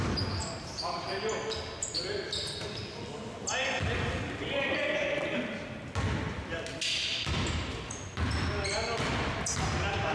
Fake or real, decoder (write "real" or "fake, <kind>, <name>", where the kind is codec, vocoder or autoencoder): real